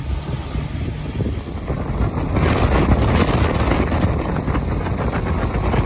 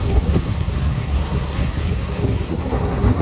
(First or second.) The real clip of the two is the first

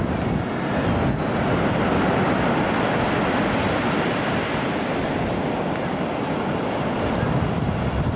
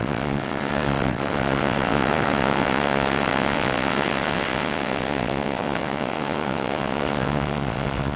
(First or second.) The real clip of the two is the first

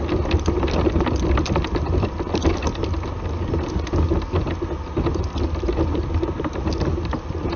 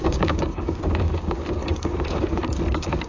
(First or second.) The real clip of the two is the first